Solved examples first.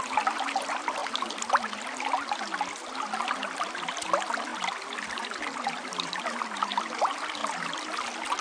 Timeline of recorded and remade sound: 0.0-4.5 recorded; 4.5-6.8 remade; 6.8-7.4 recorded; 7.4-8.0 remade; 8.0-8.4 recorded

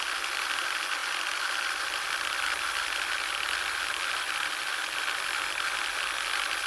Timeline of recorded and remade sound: 0.0-6.7 recorded

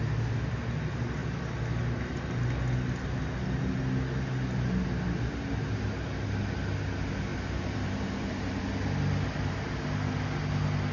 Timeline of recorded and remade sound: 0.0-7.3 recorded; 7.3-8.6 remade; 8.6-10.9 recorded

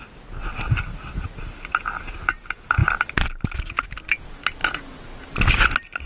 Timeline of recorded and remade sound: 0.0-6.1 recorded

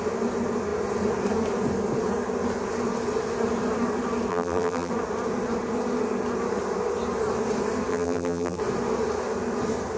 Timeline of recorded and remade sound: 0.0-4.3 recorded; 4.3-4.9 remade; 4.9-7.9 recorded; 7.9-8.6 remade; 8.6-10.0 recorded

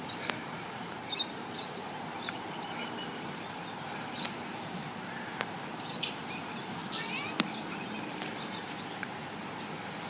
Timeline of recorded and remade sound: 0.0-6.8 remade; 6.8-8.1 recorded; 8.1-10.1 remade

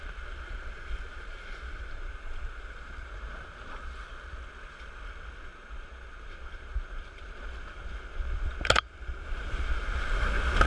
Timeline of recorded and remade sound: 0.0-1.1 recorded; 1.1-4.1 remade; 4.1-5.5 recorded; 5.5-7.5 remade; 7.5-10.7 recorded

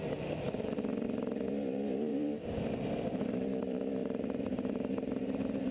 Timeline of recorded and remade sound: 0.0-0.9 remade; 0.9-1.5 recorded; 1.5-2.1 remade; 2.1-3.0 recorded; 3.0-5.7 remade